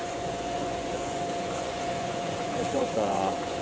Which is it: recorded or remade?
remade